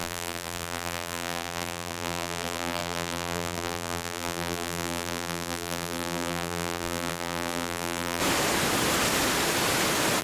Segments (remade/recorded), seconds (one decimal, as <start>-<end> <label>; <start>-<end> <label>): 0.0-8.2 remade; 8.2-10.2 recorded